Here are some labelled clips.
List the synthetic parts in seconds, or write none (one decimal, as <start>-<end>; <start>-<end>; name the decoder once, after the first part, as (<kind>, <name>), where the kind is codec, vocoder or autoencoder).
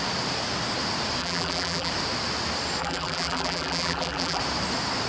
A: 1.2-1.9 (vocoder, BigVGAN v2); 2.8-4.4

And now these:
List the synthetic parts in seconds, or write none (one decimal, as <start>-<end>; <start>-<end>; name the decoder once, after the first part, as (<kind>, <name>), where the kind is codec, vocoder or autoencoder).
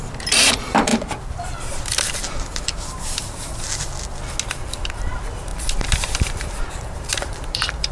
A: 0.0-0.9 (vocoder, BigVGAN v2); 1.4-3.9; 4.5-7.9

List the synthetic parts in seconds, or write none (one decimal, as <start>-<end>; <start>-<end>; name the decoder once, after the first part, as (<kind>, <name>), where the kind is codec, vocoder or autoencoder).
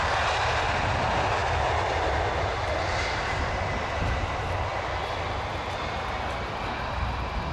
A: none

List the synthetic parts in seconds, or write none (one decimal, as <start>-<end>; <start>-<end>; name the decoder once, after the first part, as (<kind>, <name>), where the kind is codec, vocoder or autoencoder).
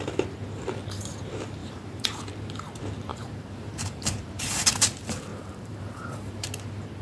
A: 1.6-2.2 (vocoder, BigVGAN v2); 3.1-4.5; 5.3-6.5